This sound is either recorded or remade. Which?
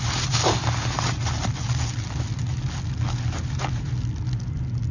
recorded